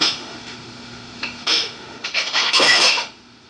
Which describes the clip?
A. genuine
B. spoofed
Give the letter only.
B